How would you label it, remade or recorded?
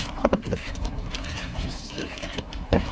remade